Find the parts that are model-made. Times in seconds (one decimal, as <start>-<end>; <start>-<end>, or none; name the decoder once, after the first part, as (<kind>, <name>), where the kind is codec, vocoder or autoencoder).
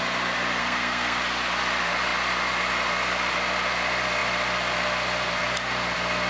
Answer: 0.6-1.2 (codec, SNAC)